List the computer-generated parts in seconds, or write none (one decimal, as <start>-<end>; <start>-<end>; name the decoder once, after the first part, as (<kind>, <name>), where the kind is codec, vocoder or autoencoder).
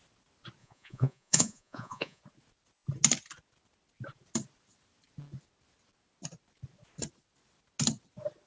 0.6-2.2 (vocoder, Vocos)